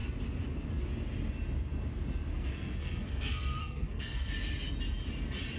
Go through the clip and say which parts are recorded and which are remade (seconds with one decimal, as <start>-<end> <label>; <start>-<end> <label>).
0.0-2.3 recorded; 2.3-4.3 remade; 4.3-5.6 recorded